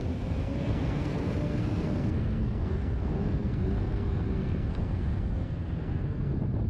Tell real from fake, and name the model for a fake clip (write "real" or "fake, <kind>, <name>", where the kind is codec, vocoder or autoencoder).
fake, codec, SNAC